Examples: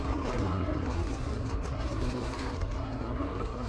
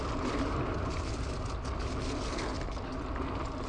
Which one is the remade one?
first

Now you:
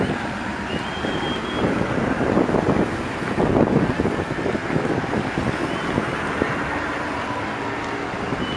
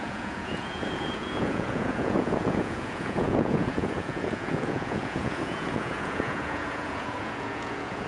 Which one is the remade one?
second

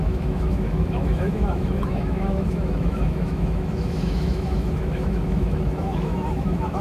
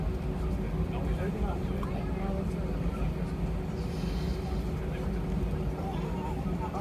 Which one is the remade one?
first